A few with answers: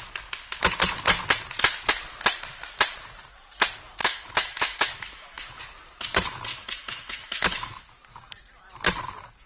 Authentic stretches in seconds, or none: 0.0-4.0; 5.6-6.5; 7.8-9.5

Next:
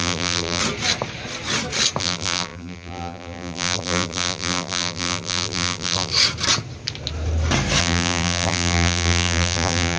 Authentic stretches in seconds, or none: 0.6-2.0; 6.1-7.8

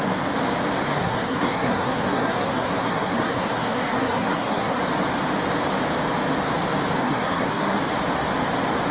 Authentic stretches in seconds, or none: 0.0-0.9; 4.8-7.0; 7.8-8.9

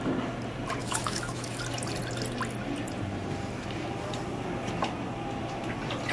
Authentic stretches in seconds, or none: 0.0-0.8; 1.6-6.1

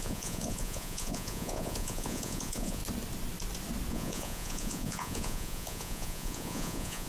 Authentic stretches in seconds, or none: 2.8-3.9

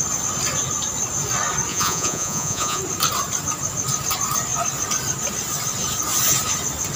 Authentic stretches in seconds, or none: 0.0-1.7; 2.8-7.0